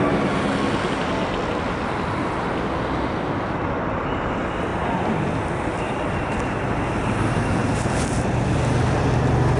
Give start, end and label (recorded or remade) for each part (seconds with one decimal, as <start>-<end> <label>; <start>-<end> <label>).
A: 0.0-9.6 recorded